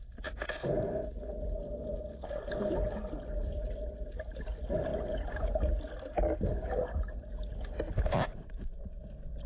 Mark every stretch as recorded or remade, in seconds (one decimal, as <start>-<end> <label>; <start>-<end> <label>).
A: 0.0-9.5 recorded